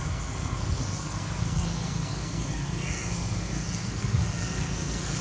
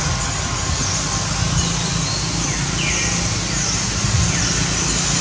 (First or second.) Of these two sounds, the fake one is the first